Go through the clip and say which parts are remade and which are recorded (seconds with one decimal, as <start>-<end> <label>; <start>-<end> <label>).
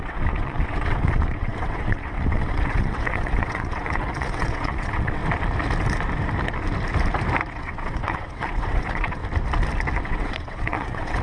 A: 0.0-5.2 remade; 5.2-7.5 recorded; 7.5-9.2 remade; 9.2-10.0 recorded; 10.0-11.2 remade